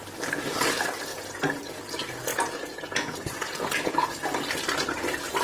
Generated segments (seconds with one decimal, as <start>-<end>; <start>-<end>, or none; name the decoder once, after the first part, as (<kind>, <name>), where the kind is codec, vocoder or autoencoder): 1.1-1.8 (vocoder, Vocos); 2.3-4.1